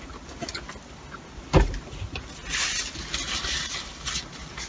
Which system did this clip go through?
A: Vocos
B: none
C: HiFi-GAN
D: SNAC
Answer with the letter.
B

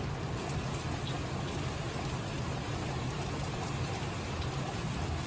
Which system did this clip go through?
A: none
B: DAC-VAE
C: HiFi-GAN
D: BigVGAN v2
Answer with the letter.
A